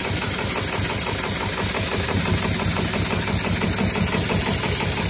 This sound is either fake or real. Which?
real